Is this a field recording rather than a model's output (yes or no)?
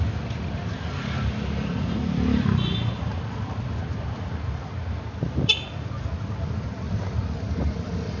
yes